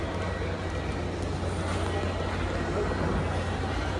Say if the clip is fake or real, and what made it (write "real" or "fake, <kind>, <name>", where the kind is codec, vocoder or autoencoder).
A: real